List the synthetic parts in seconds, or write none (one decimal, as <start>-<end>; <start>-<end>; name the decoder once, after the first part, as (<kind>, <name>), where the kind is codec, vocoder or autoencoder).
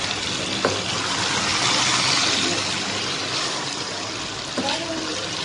none